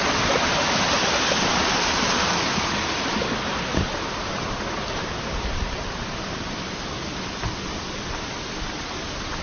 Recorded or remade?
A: recorded